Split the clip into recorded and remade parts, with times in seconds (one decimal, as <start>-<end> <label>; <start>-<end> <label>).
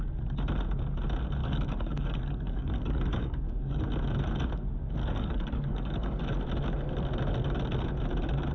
0.0-1.4 recorded; 1.4-3.8 remade; 3.8-5.0 recorded; 5.0-6.2 remade; 6.2-8.5 recorded